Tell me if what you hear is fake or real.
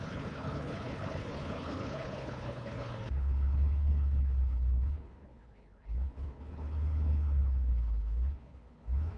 fake